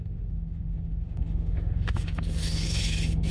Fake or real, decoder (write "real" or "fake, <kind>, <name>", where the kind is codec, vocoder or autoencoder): fake, autoencoder, DAC-VAE